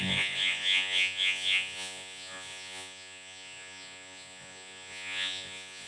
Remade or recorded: remade